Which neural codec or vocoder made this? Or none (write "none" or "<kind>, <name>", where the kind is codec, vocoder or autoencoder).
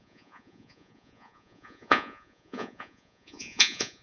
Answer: vocoder, Vocos